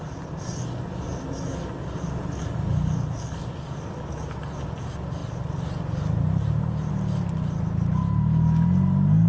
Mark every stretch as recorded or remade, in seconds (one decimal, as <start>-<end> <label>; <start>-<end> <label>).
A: 0.0-9.3 recorded

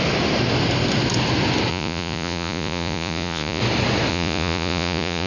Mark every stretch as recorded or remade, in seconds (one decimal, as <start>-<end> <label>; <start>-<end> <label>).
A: 0.0-1.7 recorded; 1.7-3.6 remade; 3.6-4.1 recorded; 4.1-5.3 remade